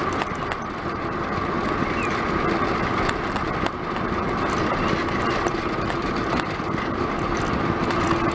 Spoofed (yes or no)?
no